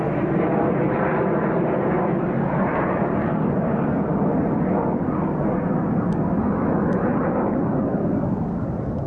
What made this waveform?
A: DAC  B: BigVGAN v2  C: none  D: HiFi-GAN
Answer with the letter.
C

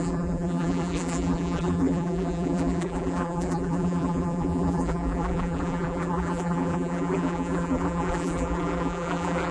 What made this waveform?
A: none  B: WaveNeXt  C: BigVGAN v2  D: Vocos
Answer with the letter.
C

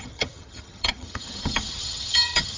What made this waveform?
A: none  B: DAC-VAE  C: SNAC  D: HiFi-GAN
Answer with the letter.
D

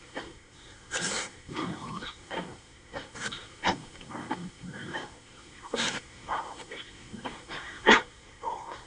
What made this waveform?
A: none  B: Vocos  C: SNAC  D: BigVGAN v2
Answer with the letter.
C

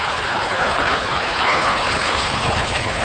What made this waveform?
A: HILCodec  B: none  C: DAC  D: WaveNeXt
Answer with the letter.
A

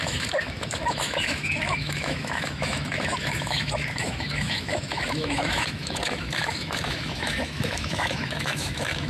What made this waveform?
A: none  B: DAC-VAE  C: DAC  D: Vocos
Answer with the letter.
B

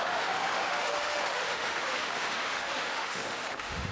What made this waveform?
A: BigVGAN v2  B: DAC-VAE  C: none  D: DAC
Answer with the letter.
B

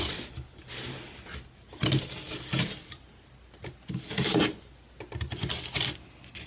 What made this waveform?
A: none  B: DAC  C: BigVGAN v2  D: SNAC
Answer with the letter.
A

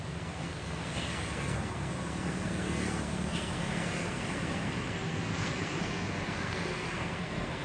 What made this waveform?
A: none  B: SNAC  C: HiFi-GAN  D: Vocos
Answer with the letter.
B